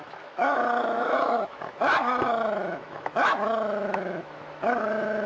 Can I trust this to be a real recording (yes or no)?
no